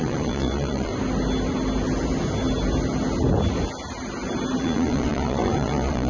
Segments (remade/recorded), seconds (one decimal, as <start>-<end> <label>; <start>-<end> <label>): 0.0-0.9 remade; 0.9-4.6 recorded; 4.6-6.1 remade